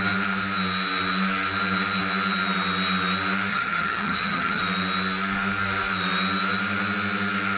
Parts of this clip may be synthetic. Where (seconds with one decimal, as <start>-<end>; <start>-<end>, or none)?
3.5-4.6